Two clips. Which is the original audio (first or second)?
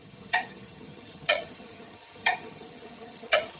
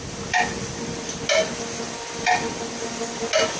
second